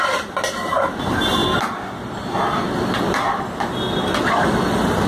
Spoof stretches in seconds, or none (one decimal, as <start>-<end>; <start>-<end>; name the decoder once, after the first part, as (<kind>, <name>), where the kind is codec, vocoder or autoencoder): none